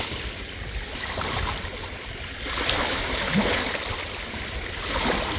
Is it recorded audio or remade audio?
recorded